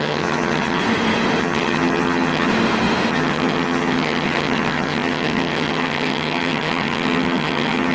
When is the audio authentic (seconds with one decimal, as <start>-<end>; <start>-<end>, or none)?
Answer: 0.8-1.4; 2.5-3.1